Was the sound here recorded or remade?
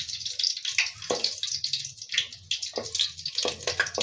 recorded